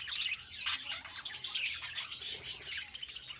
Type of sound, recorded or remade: recorded